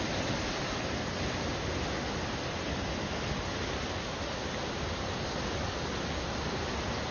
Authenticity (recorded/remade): recorded